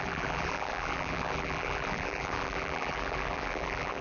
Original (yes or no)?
no